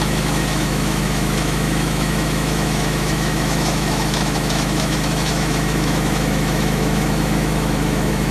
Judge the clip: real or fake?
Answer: fake